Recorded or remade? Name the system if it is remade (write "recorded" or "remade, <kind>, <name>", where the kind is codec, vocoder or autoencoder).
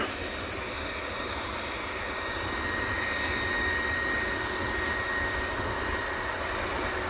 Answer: recorded